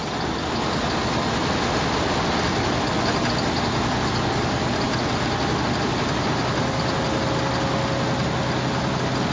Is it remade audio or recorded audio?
recorded